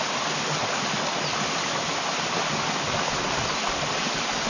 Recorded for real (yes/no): yes